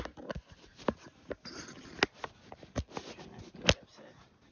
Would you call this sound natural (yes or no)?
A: yes